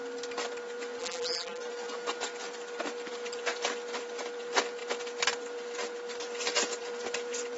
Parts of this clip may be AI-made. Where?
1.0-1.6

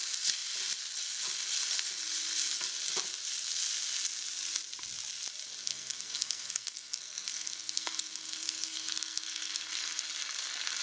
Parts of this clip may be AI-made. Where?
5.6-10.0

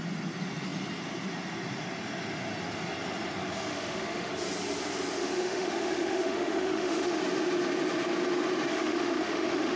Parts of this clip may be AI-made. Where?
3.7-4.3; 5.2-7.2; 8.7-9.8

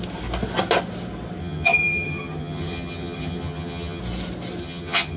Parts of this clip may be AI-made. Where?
1.4-4.0; 4.6-5.2

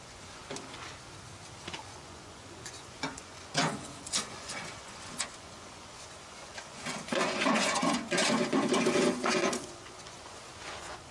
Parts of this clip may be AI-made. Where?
0.0-0.4; 1.8-11.1

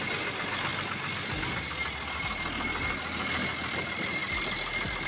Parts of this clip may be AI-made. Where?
none

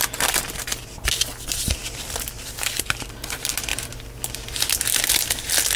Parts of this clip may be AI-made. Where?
none

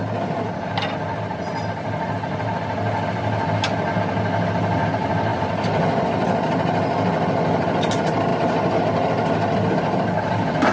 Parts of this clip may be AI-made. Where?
none